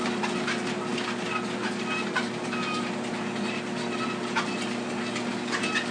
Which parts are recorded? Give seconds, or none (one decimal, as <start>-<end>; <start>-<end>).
0.0-5.9